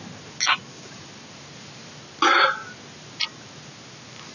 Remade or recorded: recorded